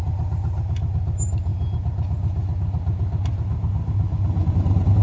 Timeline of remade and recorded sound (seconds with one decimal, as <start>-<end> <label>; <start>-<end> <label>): 0.0-5.0 recorded